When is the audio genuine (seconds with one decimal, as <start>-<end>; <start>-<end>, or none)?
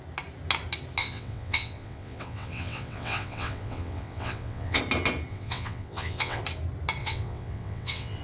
0.0-1.0; 4.8-5.3; 6.4-7.0